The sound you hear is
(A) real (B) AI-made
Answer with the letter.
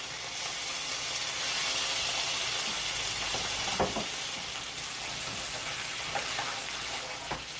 A